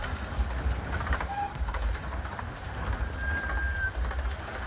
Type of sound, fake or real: real